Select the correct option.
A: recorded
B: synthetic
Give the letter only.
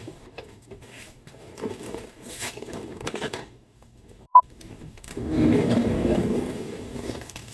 B